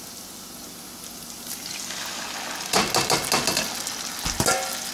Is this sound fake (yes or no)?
no